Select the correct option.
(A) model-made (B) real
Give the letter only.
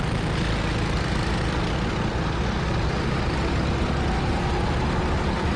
B